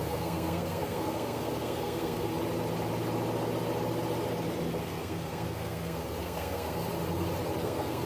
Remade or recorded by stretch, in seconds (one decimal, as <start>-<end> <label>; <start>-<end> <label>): 0.0-2.3 remade; 2.3-4.8 recorded; 4.8-6.8 remade; 6.8-7.6 recorded; 7.6-8.1 remade